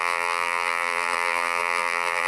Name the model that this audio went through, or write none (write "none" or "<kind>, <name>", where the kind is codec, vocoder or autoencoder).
vocoder, BigVGAN v2